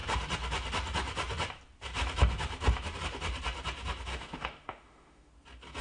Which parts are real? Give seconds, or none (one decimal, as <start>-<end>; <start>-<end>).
0.0-4.1; 5.3-5.8